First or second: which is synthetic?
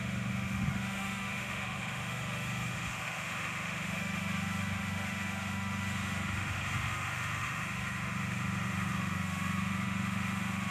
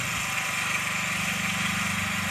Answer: first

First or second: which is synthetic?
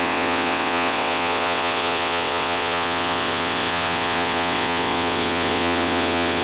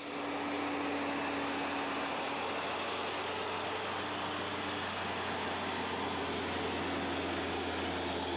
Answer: first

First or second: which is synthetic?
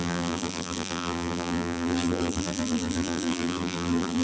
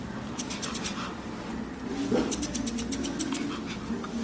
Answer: first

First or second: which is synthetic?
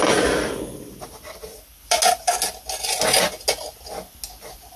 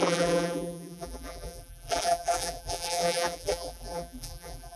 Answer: second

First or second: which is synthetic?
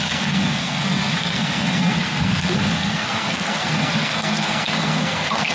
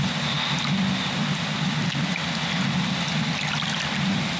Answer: first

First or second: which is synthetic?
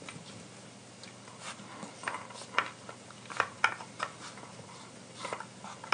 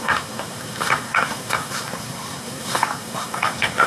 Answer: second